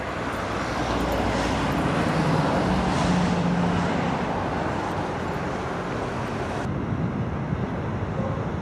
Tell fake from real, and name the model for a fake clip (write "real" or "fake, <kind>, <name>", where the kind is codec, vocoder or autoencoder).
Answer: real